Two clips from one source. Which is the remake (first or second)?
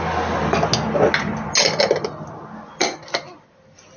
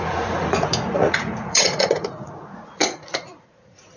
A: second